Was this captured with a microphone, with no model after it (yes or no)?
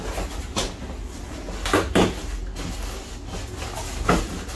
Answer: yes